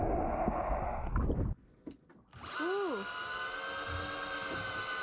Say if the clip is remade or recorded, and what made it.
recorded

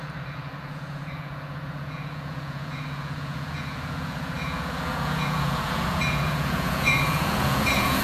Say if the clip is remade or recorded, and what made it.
remade, vocoder, Vocos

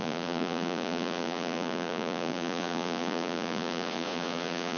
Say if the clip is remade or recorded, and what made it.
remade, vocoder, Vocos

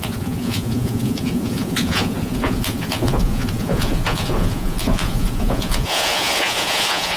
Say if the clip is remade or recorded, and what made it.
remade, vocoder, Vocos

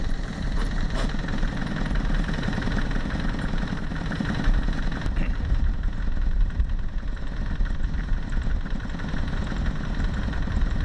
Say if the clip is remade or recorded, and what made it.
remade, vocoder, BigVGAN v2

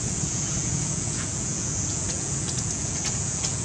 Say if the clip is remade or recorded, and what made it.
remade, vocoder, Vocos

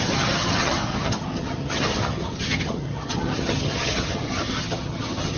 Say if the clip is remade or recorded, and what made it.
remade, vocoder, HiFi-GAN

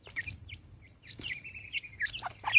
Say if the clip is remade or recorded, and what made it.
remade, vocoder, BigVGAN v2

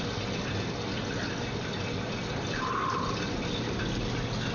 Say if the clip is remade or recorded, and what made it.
recorded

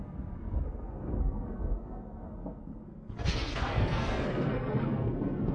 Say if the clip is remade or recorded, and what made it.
remade, codec, SNAC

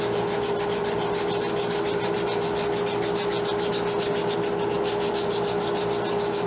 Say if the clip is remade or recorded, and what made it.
recorded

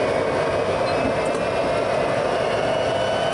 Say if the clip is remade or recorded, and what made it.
recorded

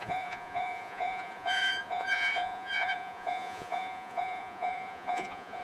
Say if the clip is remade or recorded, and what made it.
remade, vocoder, Vocos